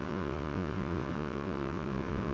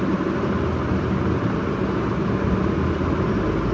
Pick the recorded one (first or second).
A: second